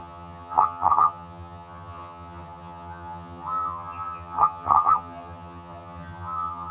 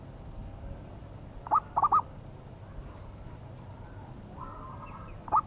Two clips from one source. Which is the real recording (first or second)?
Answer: second